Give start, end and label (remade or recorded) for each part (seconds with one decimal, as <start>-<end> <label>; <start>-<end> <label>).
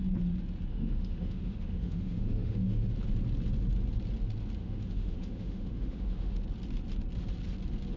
0.0-0.7 recorded; 0.7-2.9 remade; 2.9-4.6 recorded; 4.6-6.4 remade; 6.4-8.0 recorded